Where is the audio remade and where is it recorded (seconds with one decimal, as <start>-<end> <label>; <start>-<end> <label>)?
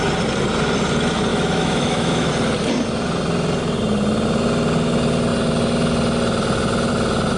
0.0-1.3 recorded; 1.3-2.3 remade; 2.3-7.4 recorded